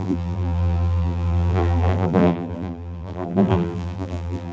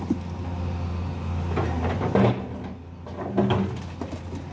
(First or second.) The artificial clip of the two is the first